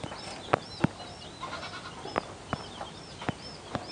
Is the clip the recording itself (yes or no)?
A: yes